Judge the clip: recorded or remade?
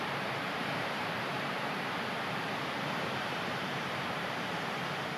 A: remade